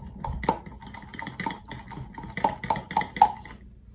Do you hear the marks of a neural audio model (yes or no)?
no